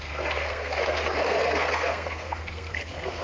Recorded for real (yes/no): no